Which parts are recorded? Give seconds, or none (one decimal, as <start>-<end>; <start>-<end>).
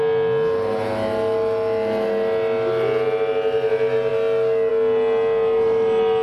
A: 0.0-6.2